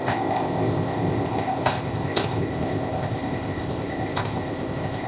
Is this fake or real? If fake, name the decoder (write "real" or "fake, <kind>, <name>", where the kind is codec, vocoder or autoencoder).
fake, codec, ZipCodec